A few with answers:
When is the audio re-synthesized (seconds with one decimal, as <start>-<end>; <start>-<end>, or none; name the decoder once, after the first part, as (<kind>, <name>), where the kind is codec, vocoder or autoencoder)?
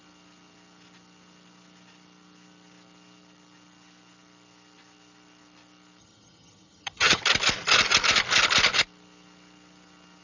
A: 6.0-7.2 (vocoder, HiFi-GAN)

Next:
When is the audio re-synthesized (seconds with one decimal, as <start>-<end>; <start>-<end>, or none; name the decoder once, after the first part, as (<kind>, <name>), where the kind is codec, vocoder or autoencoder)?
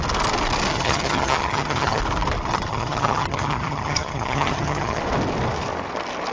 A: 0.7-2.0 (vocoder, HiFi-GAN); 2.5-5.0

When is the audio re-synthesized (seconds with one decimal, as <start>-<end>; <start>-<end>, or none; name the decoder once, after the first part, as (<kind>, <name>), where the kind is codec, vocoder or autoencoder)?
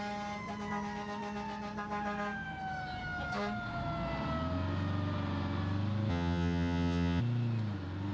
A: 6.1-7.2 (vocoder, HiFi-GAN)